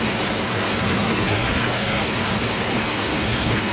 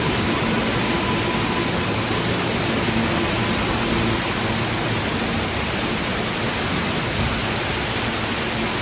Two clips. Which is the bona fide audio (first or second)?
second